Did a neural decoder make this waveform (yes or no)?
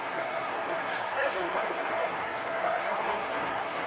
yes